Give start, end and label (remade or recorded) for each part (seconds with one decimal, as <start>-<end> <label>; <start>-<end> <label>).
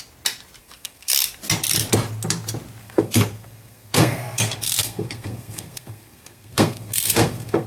0.0-0.6 recorded; 0.6-1.1 remade; 1.1-2.8 recorded; 2.8-7.7 remade